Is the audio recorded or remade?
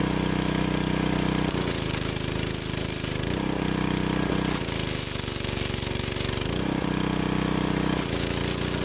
recorded